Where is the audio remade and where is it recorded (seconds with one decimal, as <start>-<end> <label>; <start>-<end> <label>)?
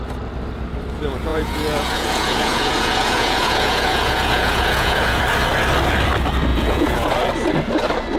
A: 0.0-1.3 recorded; 1.3-5.2 remade; 5.2-6.5 recorded; 6.5-7.1 remade; 7.1-8.2 recorded